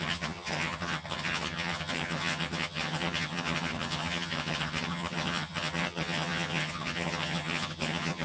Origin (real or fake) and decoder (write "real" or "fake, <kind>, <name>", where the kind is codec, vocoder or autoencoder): fake, vocoder, HiFi-GAN